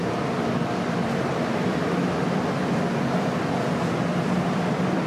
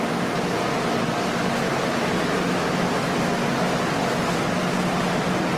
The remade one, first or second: first